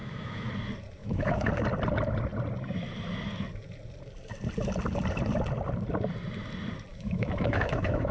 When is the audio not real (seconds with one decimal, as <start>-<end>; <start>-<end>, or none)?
0.0-0.5; 1.0-1.5; 6.9-8.1